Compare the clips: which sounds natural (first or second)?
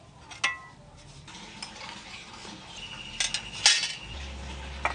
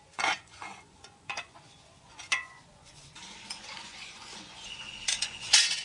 first